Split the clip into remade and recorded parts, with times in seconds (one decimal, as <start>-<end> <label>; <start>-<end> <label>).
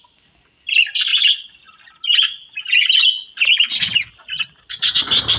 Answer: 0.0-5.4 recorded